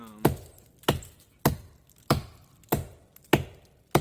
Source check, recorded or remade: recorded